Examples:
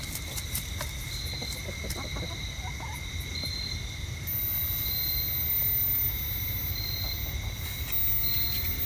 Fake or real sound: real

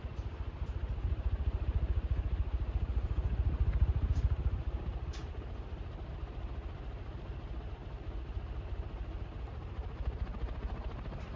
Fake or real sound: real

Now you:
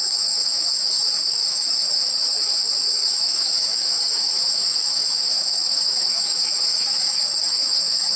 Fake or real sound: fake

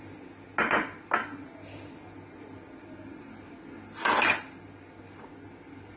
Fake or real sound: real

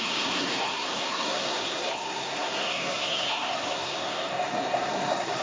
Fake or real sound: fake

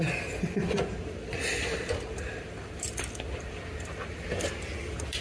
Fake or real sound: real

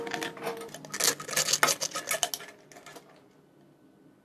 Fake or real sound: real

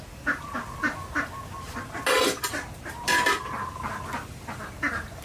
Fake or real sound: real